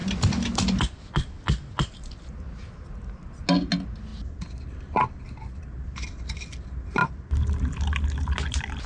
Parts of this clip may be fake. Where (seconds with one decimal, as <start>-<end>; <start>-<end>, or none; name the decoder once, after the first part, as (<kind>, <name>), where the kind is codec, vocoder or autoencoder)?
none